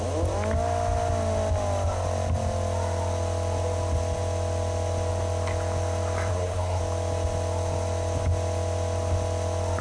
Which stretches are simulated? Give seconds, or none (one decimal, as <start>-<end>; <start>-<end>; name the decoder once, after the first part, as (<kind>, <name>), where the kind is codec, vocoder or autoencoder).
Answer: 6.3-6.8 (codec, SNAC)

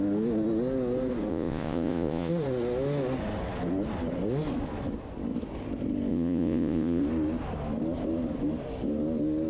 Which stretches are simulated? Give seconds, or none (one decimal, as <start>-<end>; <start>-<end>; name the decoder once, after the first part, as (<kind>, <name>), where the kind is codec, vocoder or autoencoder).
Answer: 1.3-2.3 (vocoder, Vocos); 6.1-7.0

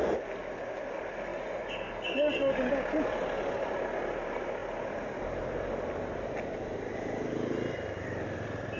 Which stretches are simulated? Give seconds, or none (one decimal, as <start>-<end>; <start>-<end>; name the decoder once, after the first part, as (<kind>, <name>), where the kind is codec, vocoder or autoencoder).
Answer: 1.3-2.7 (codec, DAC)

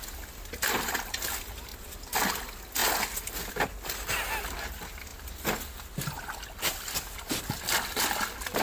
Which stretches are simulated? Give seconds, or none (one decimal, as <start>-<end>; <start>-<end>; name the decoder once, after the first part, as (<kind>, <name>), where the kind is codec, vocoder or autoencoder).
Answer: none

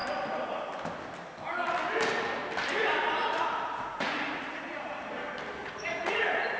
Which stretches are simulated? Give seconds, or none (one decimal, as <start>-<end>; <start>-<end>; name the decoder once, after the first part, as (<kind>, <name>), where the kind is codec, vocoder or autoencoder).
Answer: 3.2-5.1 (vocoder, Vocos); 5.6-6.6

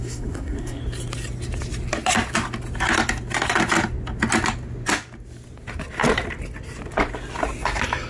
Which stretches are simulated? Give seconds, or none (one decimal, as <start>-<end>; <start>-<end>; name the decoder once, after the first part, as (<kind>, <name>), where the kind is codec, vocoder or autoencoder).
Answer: 0.0-0.8 (codec, SNAC)